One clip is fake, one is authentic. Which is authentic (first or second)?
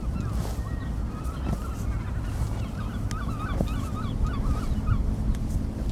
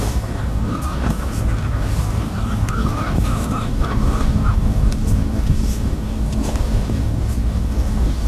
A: first